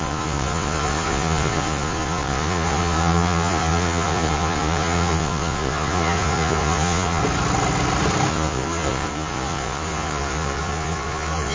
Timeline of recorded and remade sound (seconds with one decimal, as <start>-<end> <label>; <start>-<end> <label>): 0.0-7.2 remade; 7.2-8.3 recorded; 8.3-11.5 remade